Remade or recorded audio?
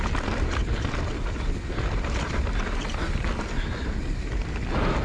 recorded